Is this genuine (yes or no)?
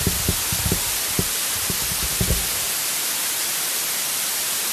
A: yes